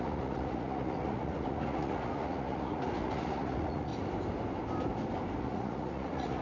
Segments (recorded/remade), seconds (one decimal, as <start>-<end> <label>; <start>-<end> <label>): 0.0-3.9 remade; 3.9-5.4 recorded; 5.4-6.4 remade

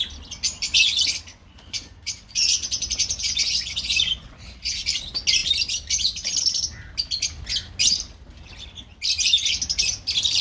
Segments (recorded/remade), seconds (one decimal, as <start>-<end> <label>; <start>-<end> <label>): 0.0-1.3 recorded; 1.3-4.7 remade; 4.7-10.4 recorded